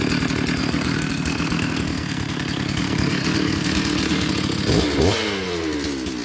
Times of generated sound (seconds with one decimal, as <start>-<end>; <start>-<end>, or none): 0.6-4.3